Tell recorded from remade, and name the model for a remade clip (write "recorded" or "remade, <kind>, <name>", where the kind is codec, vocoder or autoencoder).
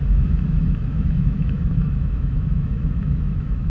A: remade, autoencoder, DAC-VAE